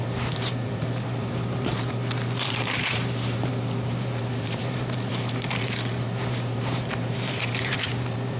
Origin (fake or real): fake